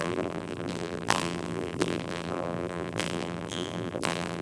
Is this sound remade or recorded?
remade